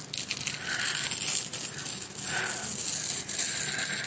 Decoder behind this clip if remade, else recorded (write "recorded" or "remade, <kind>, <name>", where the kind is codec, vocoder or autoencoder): recorded